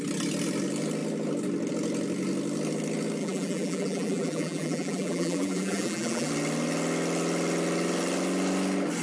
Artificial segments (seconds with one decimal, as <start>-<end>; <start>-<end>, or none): 3.2-6.3